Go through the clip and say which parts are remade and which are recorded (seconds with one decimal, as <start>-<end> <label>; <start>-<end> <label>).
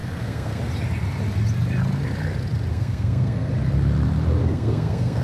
0.0-0.6 remade; 0.6-2.7 recorded; 2.7-3.5 remade; 3.5-4.4 recorded; 4.4-5.2 remade